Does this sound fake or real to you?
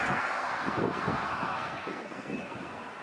fake